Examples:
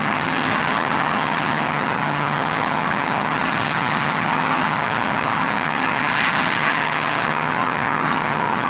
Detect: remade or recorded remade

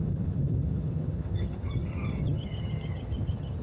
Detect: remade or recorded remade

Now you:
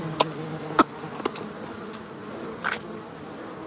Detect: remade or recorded recorded